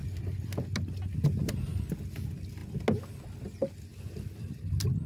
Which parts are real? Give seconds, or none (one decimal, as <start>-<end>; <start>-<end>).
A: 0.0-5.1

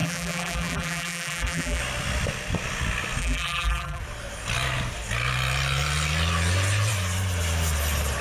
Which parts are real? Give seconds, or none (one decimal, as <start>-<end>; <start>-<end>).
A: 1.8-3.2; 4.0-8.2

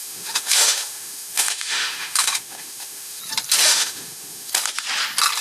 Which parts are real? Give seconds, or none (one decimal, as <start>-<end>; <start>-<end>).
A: 3.2-3.6; 4.5-5.4

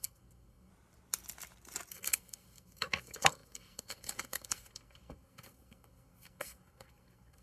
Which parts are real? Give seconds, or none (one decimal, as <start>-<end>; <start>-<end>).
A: 0.7-1.9